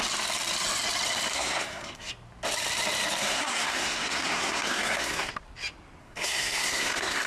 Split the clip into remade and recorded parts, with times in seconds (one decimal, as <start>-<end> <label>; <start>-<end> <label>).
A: 0.0-1.3 recorded; 1.3-2.1 remade; 2.1-3.2 recorded; 3.2-5.3 remade; 5.3-6.0 recorded; 6.0-7.3 remade